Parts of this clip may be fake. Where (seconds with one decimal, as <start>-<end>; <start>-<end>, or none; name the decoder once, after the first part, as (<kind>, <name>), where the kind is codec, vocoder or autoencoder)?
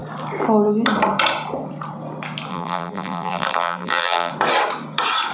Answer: 2.5-4.3 (vocoder, BigVGAN v2)